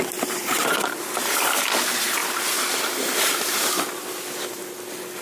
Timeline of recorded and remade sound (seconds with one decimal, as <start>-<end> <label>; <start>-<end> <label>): 0.0-2.2 recorded; 2.2-3.7 remade; 3.7-5.2 recorded